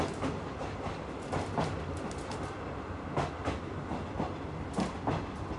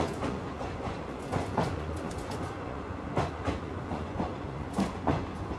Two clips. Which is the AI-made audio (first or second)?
second